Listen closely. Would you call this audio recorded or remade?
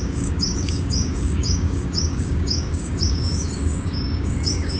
remade